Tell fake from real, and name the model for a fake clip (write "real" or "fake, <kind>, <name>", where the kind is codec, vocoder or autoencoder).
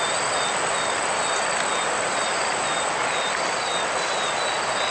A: real